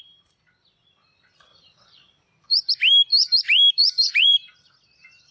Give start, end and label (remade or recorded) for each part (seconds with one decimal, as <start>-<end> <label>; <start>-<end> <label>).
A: 0.0-1.5 recorded; 1.5-2.7 remade; 2.7-3.1 recorded; 3.1-4.7 remade; 4.7-5.3 recorded